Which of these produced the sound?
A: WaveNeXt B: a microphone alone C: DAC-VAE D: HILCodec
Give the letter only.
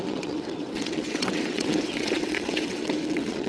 A